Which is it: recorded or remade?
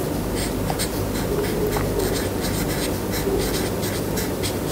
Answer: recorded